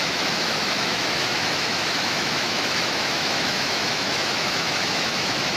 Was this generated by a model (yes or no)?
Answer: yes